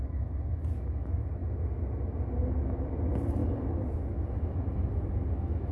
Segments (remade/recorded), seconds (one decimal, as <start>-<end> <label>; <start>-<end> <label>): 0.0-3.4 recorded; 3.4-5.1 remade; 5.1-5.7 recorded